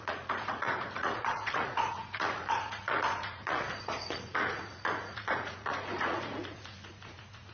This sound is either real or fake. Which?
fake